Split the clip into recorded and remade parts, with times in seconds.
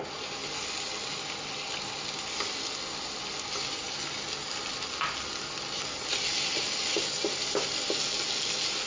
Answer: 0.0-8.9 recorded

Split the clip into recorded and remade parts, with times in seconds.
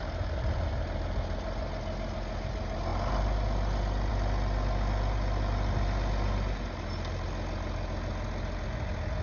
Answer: 0.0-9.2 recorded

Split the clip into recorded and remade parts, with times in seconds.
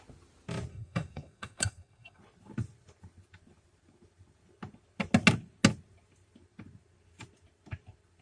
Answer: 0.0-0.7 recorded; 0.7-2.2 remade; 2.2-8.2 recorded